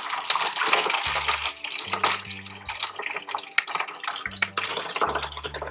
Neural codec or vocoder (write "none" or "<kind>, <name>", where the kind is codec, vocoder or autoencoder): none